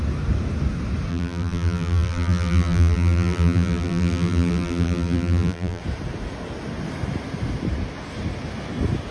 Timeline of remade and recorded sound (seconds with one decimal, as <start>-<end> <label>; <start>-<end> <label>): 0.0-1.1 recorded; 1.1-5.8 remade; 5.8-9.1 recorded

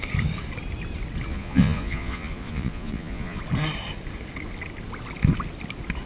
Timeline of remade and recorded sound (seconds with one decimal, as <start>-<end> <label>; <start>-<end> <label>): 0.0-1.3 recorded; 1.3-3.4 remade; 3.4-6.1 recorded

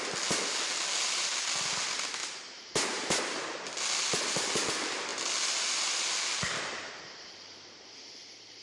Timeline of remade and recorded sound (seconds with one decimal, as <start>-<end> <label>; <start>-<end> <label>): 0.0-2.2 recorded; 2.2-3.2 remade; 3.2-8.6 recorded